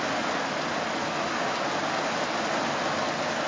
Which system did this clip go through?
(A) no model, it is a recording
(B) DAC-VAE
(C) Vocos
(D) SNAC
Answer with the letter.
A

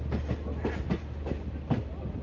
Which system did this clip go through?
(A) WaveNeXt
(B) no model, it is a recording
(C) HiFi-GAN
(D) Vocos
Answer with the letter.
B